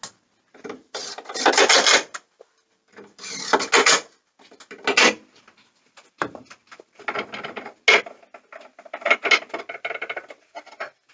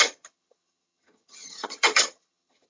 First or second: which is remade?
second